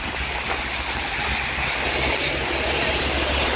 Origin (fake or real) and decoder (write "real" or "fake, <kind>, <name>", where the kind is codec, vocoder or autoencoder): real